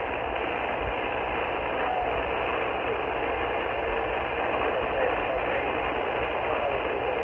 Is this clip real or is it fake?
real